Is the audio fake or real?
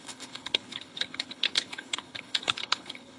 fake